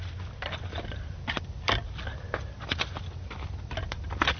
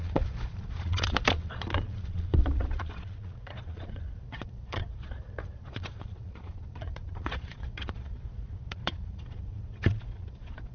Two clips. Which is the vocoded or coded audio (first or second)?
second